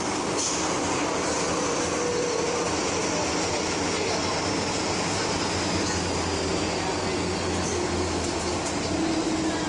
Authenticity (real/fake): real